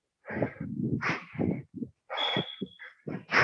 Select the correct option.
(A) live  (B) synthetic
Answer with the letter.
A